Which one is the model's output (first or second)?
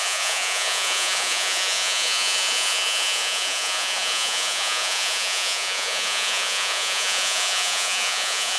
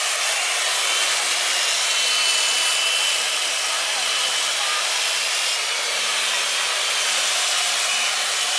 first